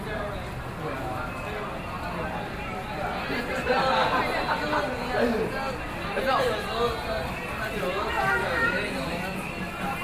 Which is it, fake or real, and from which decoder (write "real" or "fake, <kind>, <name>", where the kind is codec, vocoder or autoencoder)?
real